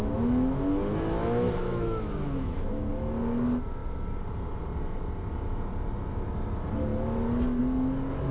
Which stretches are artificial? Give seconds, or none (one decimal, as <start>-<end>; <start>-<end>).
0.0-2.9